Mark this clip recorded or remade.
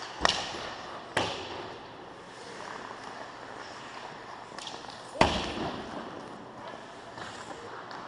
recorded